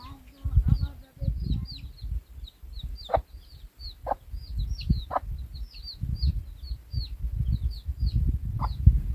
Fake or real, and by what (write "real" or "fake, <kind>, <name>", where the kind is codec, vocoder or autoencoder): real